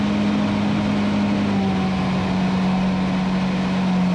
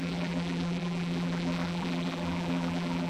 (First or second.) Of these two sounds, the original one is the first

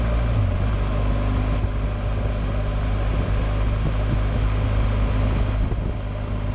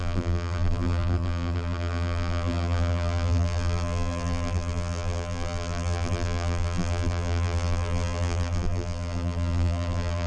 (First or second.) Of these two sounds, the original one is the first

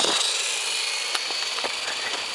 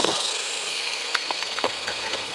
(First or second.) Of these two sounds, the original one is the first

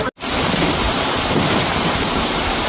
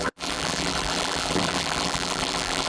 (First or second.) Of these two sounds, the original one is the first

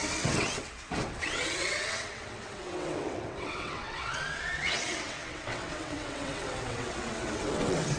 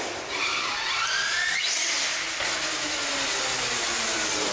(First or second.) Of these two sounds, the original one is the second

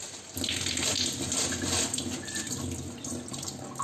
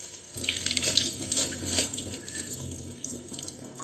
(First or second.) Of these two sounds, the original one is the first